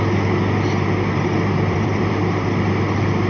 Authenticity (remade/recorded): remade